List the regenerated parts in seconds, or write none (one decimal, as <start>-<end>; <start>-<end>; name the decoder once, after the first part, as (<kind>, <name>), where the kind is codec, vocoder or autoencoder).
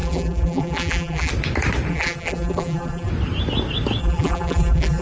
0.0-1.3 (vocoder, BigVGAN v2); 1.9-3.1; 4.0-5.0